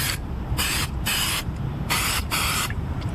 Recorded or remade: remade